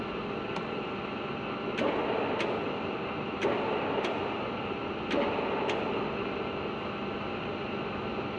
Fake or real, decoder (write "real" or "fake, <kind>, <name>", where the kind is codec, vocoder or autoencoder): real